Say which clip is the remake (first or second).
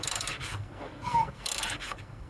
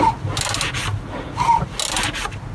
first